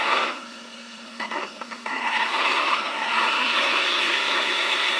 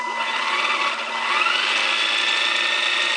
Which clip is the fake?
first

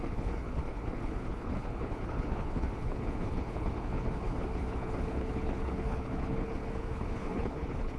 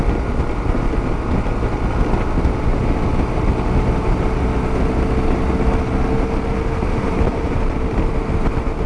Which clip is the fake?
first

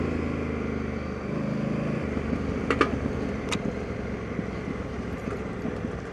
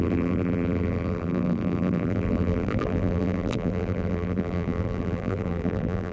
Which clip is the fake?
second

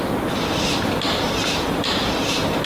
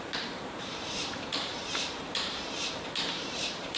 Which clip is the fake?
second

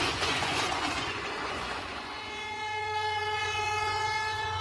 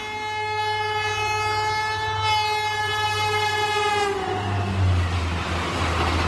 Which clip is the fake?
first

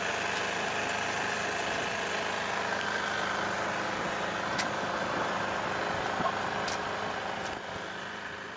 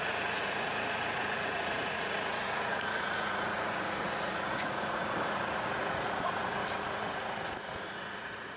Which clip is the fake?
second